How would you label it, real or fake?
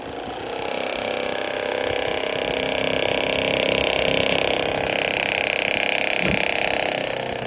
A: real